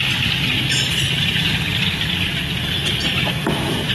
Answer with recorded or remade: recorded